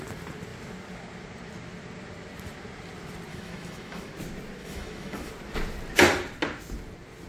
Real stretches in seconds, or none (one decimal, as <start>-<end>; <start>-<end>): 0.0-3.3; 4.1-4.6; 5.3-7.3